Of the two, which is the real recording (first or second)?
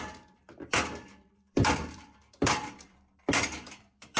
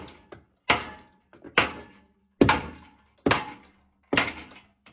second